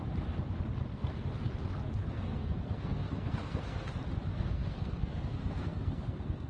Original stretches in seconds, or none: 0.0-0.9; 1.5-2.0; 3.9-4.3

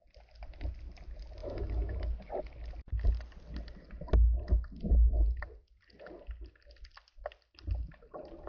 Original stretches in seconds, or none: 0.0-1.4; 2.0-8.5

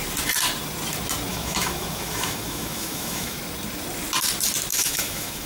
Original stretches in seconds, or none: 0.0-1.3; 3.4-4.7